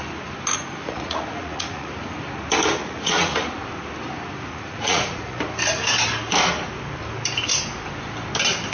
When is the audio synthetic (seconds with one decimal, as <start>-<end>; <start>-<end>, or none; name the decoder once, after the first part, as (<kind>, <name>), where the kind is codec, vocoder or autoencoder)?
0.8-1.9 (vocoder, Vocos); 2.8-3.6; 4.5-5.4